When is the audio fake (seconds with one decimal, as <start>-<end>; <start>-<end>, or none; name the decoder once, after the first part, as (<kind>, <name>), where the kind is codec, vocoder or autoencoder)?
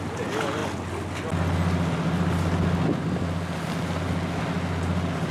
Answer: none